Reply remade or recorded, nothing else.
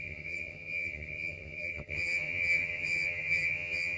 remade